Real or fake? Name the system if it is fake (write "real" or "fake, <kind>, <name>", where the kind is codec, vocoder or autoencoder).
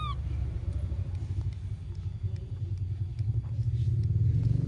real